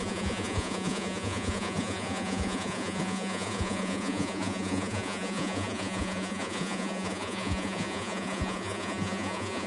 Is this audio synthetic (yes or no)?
yes